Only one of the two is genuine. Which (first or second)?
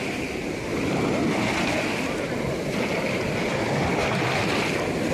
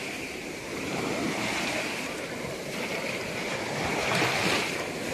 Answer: first